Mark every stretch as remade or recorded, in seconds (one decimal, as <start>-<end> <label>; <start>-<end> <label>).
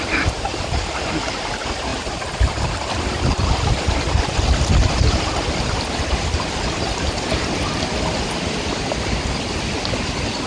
0.0-1.9 recorded; 1.9-2.5 remade; 2.5-7.0 recorded; 7.0-7.6 remade; 7.6-10.5 recorded